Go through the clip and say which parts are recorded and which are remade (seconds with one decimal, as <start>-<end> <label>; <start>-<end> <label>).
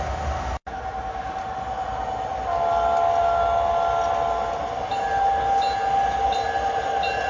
0.0-7.3 recorded